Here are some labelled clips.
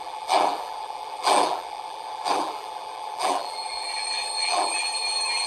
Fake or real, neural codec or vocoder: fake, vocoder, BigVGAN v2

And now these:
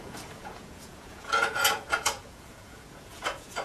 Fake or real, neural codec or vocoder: fake, vocoder, Vocos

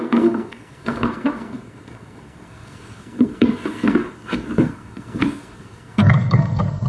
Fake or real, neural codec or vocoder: fake, codec, SNAC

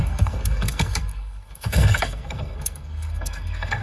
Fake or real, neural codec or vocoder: fake, codec, SNAC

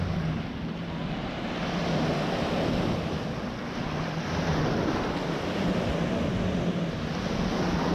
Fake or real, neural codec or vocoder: real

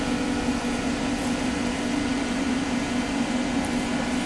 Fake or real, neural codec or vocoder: fake, vocoder, BigVGAN v2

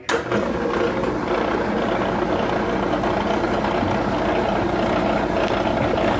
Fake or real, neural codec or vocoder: real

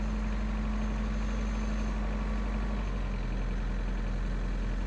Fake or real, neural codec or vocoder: real